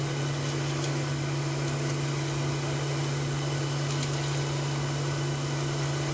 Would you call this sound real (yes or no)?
yes